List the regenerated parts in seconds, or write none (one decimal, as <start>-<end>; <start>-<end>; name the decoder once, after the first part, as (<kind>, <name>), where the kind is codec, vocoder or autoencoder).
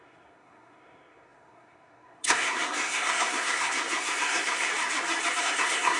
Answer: 0.0-4.7 (codec, SNAC); 5.4-6.0